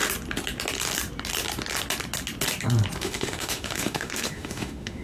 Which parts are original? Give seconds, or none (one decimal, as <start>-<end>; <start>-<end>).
0.0-3.0